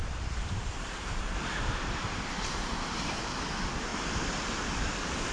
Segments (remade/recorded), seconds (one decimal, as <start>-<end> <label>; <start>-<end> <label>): 0.0-3.2 remade; 3.2-5.3 recorded